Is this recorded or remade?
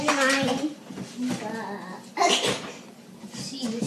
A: recorded